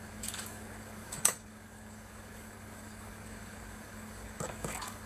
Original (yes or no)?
no